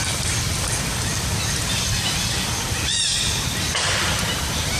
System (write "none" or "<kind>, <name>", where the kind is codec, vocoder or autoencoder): vocoder, BigVGAN v2